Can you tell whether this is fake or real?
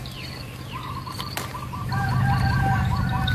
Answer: fake